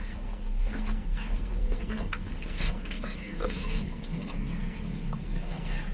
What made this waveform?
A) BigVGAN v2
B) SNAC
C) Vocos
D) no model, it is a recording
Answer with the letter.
B